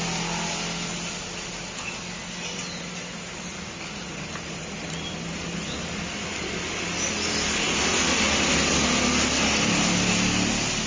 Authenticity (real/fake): real